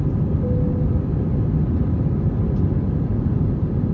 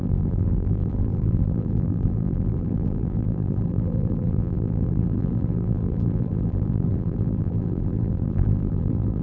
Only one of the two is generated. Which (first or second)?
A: second